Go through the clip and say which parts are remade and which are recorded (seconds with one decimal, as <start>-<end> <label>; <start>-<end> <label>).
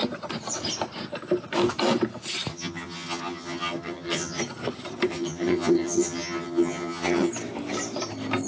0.0-2.5 recorded; 2.5-4.4 remade; 4.4-5.1 recorded; 5.1-7.3 remade; 7.3-8.5 recorded